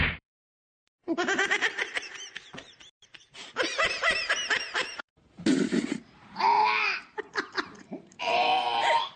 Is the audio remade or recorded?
remade